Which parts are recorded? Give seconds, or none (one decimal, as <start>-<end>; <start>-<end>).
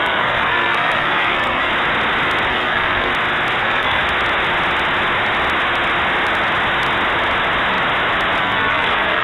1.7-2.5; 3.1-3.6; 4.0-8.4